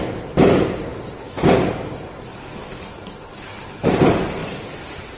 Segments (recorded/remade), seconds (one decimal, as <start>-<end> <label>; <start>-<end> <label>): 0.0-0.9 remade; 0.9-4.0 recorded; 4.0-5.2 remade